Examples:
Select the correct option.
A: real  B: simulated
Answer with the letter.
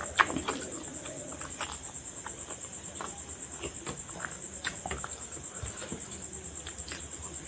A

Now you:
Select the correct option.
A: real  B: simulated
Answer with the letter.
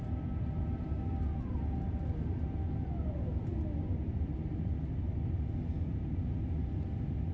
A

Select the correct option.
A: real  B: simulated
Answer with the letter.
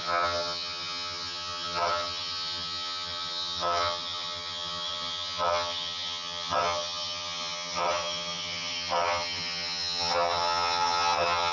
B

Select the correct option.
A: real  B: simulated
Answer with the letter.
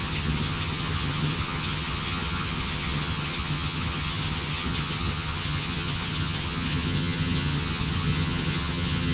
B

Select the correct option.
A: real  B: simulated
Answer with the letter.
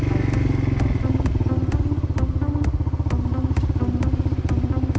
A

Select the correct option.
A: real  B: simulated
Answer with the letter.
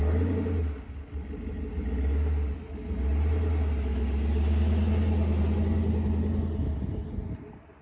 A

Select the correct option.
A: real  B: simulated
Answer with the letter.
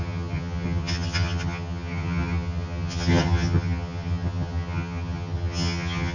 B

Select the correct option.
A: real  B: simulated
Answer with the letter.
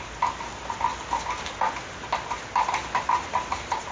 A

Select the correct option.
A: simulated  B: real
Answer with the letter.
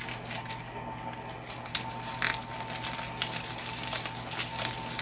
B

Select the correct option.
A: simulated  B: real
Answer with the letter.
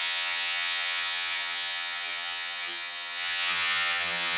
A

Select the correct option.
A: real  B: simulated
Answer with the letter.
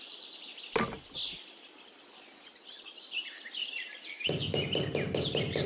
A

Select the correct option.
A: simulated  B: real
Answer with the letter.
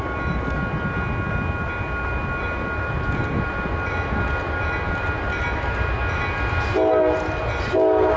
B